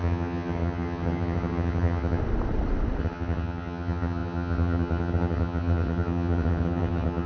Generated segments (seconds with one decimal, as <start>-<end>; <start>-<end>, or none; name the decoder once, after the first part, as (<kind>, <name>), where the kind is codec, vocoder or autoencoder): 0.0-2.2 (vocoder, HiFi-GAN); 3.0-7.3